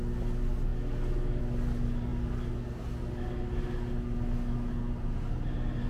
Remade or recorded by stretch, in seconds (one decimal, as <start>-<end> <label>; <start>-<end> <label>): 0.0-5.9 recorded